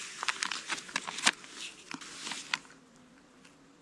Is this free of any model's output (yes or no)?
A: yes